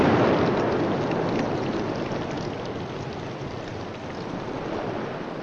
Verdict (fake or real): real